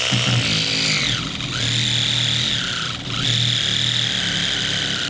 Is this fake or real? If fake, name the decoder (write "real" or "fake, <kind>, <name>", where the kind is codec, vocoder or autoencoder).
real